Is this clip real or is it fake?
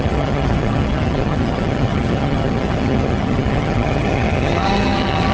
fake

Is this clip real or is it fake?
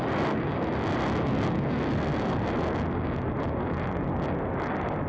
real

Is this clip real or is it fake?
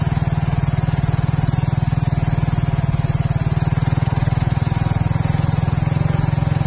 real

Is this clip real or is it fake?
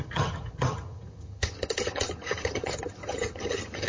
fake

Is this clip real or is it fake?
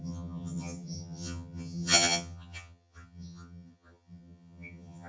fake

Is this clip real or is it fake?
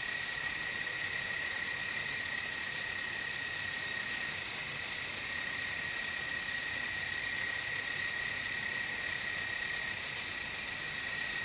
real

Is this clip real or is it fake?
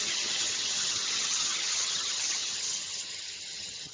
fake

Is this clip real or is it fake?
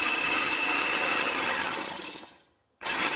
fake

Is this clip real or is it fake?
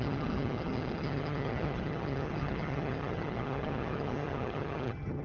fake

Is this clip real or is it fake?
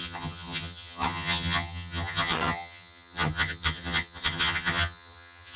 fake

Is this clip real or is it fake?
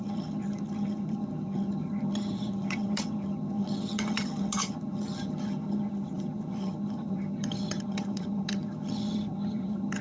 fake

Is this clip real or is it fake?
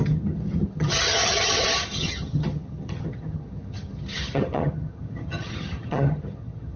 fake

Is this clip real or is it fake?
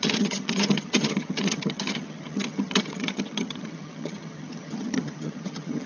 fake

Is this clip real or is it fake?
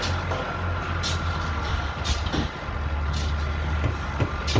real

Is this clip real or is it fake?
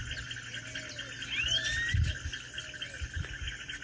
real